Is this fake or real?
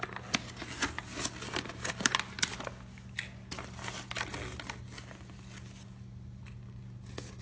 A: real